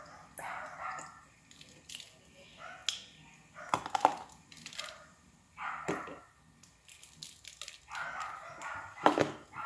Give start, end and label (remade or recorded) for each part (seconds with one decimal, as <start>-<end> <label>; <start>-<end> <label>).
0.0-9.7 recorded